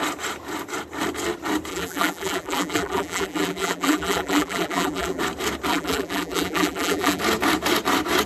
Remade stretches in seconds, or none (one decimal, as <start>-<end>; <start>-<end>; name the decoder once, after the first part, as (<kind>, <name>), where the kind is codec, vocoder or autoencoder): 1.7-5.2 (vocoder, BigVGAN v2); 5.7-7.2